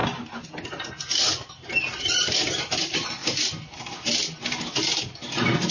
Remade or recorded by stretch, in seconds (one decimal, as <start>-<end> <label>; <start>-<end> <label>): 0.0-5.7 recorded